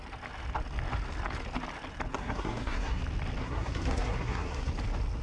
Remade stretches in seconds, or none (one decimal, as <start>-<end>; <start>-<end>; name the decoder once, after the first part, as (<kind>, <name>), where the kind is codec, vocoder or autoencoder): 2.1-3.0 (codec, SNAC); 3.4-4.7